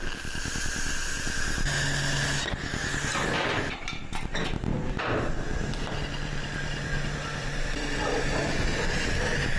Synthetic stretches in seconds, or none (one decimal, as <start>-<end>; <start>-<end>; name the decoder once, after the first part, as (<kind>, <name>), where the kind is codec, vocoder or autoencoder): 3.1-4.0 (vocoder, BigVGAN v2); 4.7-8.8